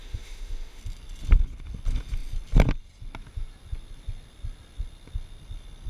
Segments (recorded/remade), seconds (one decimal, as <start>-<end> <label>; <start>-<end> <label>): 0.0-0.8 remade; 0.8-5.9 recorded